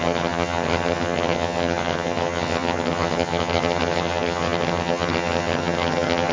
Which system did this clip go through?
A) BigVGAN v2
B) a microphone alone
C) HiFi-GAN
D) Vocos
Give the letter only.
C